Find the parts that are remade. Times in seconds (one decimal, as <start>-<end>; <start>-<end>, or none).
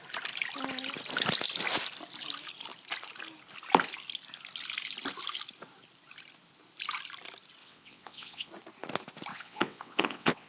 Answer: 7.6-8.5; 9.3-10.5